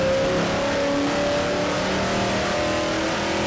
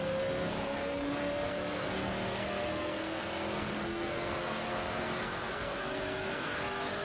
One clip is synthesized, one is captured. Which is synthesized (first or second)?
second